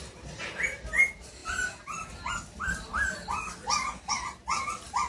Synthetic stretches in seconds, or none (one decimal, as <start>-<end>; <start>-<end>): none